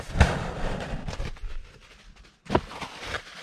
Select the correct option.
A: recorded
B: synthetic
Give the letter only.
A